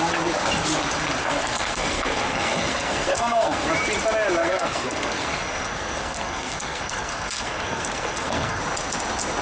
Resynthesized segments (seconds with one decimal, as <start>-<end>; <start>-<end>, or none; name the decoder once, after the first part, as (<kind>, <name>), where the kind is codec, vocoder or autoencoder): 1.2-3.7 (codec, SNAC); 4.4-8.6